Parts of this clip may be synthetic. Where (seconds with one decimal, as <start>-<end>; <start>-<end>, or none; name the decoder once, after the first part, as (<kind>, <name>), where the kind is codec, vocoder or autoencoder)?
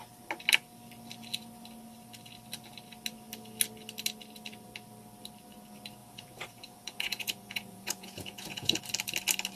6.0-8.8 (vocoder, Vocos)